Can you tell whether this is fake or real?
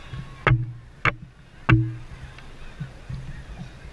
real